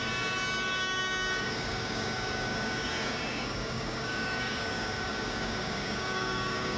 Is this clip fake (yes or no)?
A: yes